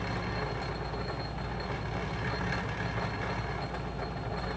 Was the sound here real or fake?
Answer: real